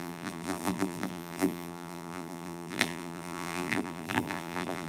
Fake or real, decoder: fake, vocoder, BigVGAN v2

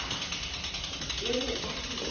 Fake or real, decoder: real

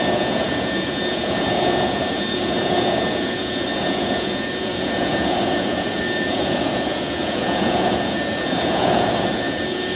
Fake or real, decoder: fake, vocoder, Vocos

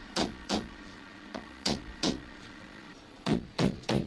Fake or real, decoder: fake, vocoder, Vocos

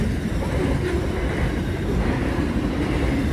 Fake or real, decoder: real